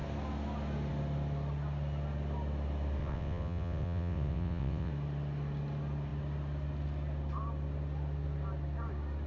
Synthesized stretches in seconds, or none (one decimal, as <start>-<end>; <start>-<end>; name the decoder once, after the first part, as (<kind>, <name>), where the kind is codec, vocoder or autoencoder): 3.0-4.9 (vocoder, WaveNeXt)